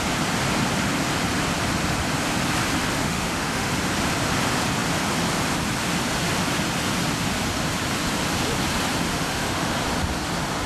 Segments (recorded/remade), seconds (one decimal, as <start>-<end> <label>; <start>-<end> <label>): 0.0-3.0 recorded; 3.0-3.7 remade; 3.7-9.1 recorded; 9.1-9.8 remade; 9.8-10.7 recorded